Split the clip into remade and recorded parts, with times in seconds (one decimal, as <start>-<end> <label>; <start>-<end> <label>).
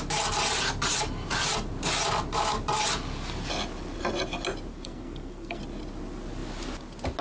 0.0-4.7 recorded; 4.7-5.6 remade; 5.6-7.2 recorded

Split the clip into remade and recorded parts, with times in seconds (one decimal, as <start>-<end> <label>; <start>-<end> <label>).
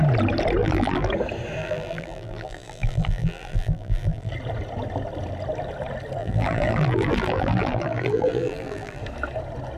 0.0-0.6 recorded; 0.6-1.1 remade; 1.1-1.6 recorded; 1.6-4.3 remade; 4.3-6.2 recorded; 6.2-9.0 remade; 9.0-9.8 recorded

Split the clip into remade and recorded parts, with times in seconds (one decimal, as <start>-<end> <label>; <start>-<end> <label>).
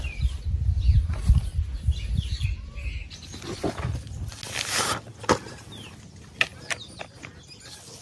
0.0-8.0 recorded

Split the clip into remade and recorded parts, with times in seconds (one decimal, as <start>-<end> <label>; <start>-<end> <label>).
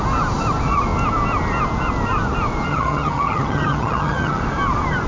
0.0-2.7 recorded; 2.7-4.4 remade; 4.4-5.1 recorded